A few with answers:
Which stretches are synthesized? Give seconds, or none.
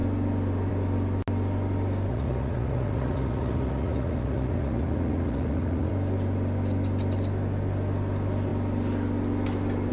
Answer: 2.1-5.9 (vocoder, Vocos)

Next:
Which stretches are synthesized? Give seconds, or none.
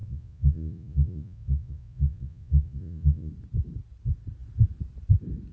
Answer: 0.0-3.3 (vocoder, Vocos)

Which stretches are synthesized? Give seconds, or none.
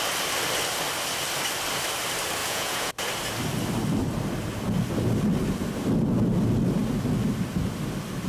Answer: 2.4-2.9 (vocoder, Vocos)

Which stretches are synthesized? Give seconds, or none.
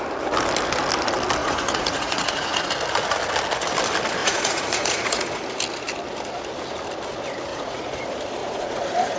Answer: 1.4-2.7 (vocoder, Vocos); 4.2-5.4; 7.5-8.0; 8.4-9.2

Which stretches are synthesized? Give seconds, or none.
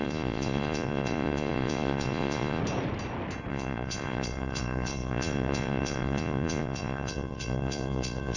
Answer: 0.0-2.6 (vocoder, Vocos); 3.5-8.4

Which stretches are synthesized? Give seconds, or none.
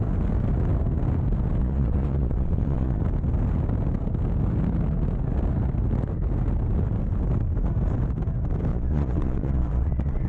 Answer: 1.6-3.0 (vocoder, Vocos); 8.7-10.3